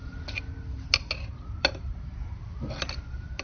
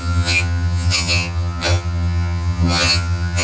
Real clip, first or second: first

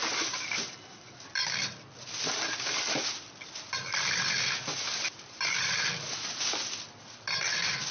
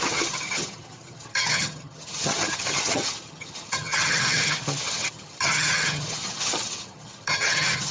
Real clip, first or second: first